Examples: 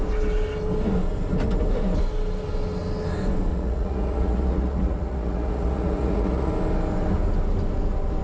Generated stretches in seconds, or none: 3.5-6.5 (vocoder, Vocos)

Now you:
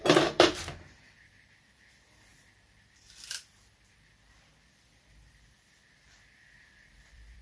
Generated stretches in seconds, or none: 0.0-2.3 (vocoder, BigVGAN v2); 3.9-7.4

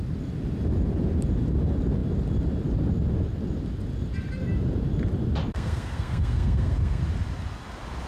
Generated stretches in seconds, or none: 5.5-7.0 (codec, SNAC)

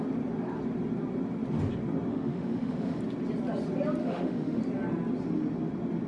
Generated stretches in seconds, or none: 2.1-3.0 (autoencoder, DAC-VAE); 4.0-4.6

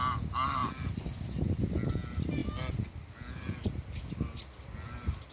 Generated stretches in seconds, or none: none